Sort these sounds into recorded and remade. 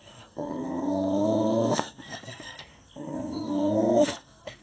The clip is remade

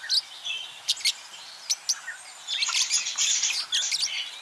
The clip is recorded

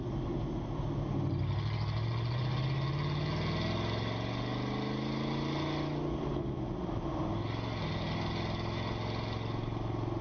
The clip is recorded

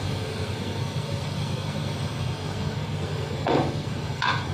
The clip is remade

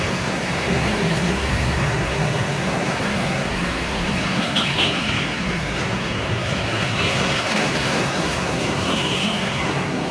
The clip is remade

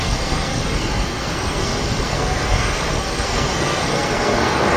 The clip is remade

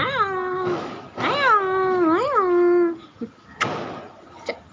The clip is recorded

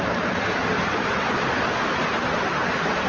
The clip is recorded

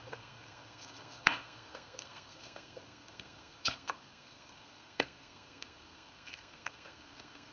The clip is remade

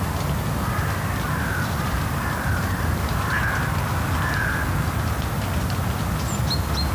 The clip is recorded